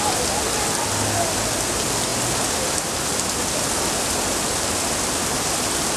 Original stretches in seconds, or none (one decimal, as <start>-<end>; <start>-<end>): 0.0-6.0